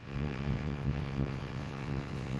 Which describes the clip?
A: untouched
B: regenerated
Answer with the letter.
B